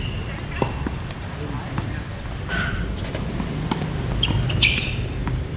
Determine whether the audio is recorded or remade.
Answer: recorded